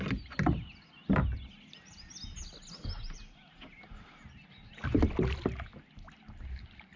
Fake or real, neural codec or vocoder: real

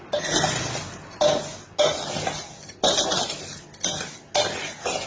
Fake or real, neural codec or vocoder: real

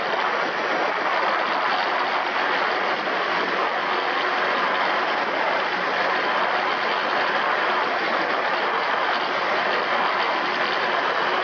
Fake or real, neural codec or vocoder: real